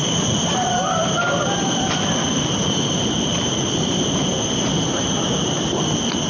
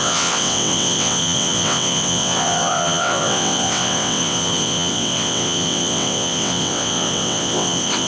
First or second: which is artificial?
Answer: second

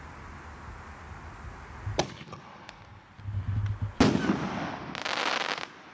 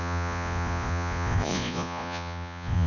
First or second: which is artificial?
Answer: second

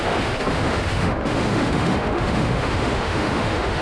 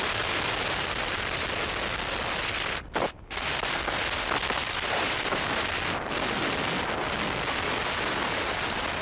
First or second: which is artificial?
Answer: first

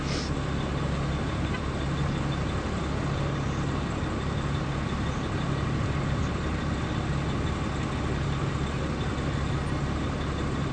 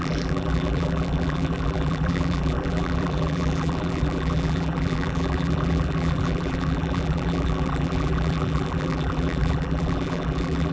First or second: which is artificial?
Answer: second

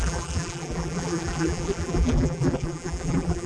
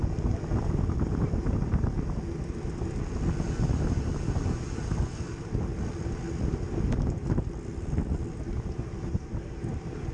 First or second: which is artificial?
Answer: first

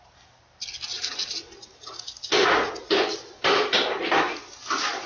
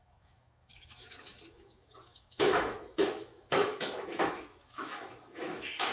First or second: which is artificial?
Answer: second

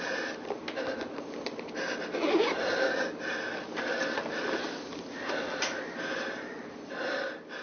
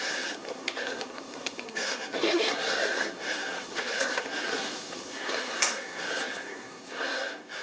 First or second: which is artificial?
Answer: second